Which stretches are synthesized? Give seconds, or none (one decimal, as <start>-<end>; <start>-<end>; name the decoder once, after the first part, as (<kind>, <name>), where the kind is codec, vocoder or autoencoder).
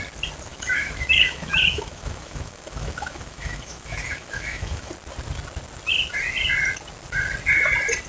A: 0.5-4.9 (autoencoder, DAC-VAE)